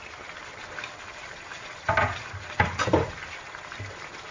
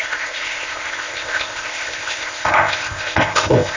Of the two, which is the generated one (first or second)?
second